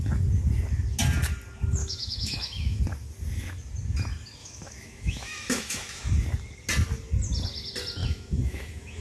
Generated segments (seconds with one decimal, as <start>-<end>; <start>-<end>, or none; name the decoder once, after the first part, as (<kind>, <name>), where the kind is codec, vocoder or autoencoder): 1.8-2.8 (autoencoder, DAC-VAE); 4.4-6.1; 8.0-9.0